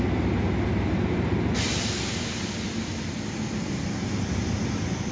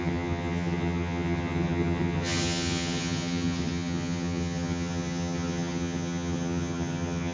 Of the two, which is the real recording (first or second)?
first